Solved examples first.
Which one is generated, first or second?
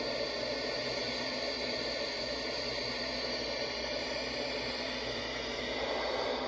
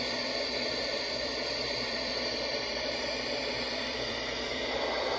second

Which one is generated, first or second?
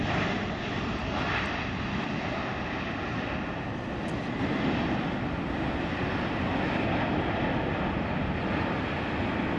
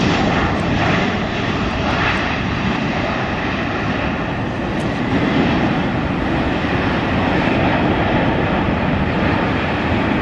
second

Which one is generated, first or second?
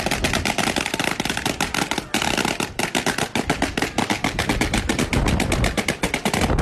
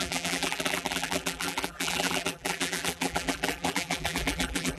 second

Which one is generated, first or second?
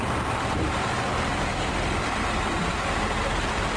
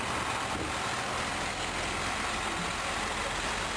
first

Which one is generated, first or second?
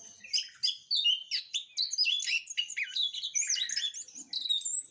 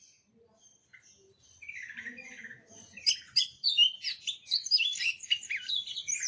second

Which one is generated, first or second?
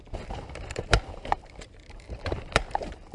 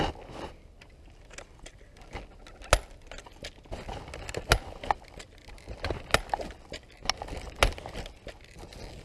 first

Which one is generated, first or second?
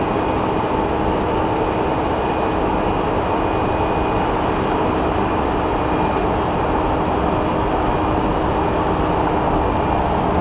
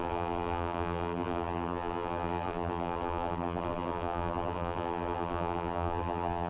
second